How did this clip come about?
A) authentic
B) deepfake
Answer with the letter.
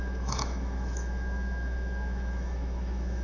B